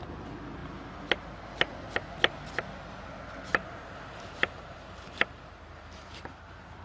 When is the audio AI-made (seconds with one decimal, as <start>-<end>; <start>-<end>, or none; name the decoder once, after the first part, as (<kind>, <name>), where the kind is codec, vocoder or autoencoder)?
3.5-6.0 (vocoder, BigVGAN v2)